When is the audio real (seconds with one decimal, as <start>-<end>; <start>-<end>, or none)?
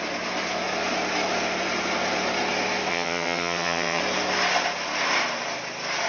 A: 0.0-2.9; 4.0-6.1